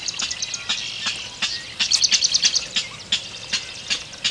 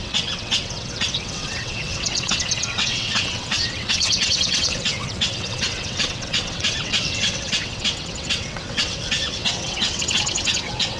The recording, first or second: first